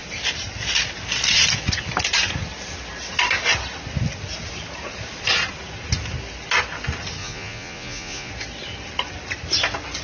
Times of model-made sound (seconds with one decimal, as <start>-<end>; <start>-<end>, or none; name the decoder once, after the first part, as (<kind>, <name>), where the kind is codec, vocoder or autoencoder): 7.2-8.3 (vocoder, Vocos)